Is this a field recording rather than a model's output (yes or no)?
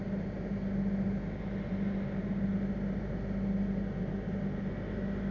yes